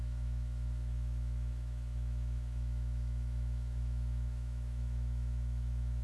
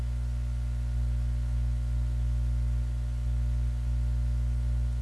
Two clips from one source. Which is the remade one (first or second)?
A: first